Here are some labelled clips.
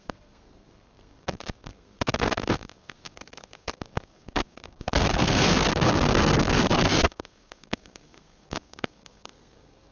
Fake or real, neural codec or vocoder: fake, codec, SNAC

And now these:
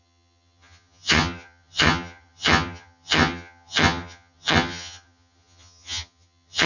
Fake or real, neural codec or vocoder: fake, vocoder, HiFi-GAN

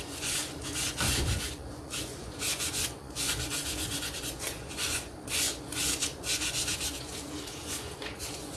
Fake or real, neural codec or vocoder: fake, vocoder, Vocos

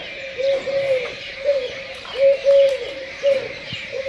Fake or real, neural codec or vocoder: fake, vocoder, BigVGAN v2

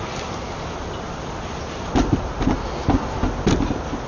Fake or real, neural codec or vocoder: real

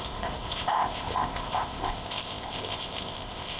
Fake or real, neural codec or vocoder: fake, codec, ZipCodec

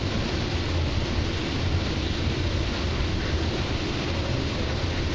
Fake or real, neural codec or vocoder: real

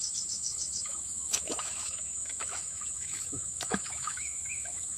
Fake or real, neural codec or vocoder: fake, autoencoder, DAC-VAE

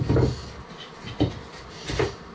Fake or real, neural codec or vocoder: real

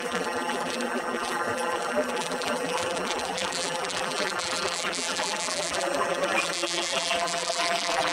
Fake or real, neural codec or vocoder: fake, vocoder, BigVGAN v2